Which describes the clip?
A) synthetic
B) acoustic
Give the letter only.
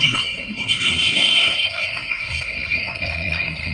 A